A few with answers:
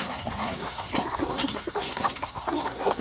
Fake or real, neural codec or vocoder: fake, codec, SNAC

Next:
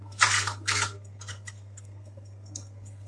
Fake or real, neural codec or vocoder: fake, codec, SNAC